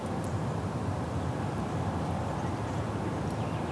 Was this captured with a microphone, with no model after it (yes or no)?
yes